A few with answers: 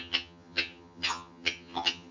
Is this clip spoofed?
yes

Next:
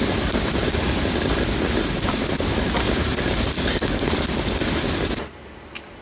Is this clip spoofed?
no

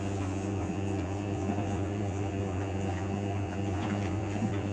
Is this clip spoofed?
yes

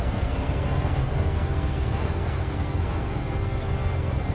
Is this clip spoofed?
yes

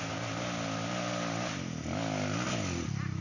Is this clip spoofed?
no